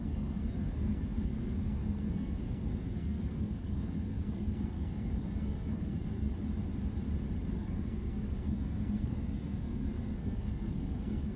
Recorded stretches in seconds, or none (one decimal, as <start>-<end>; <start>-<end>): 6.3-7.5